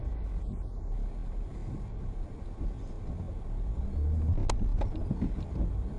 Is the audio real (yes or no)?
yes